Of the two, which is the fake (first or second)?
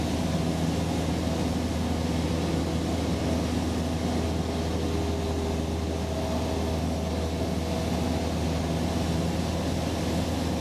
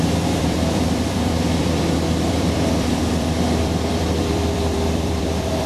second